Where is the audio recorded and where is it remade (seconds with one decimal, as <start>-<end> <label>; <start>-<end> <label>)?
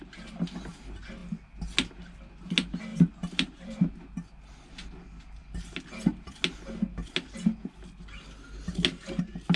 0.0-2.9 recorded; 2.9-4.7 remade; 4.7-9.6 recorded